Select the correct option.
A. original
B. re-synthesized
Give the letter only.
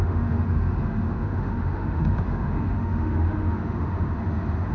B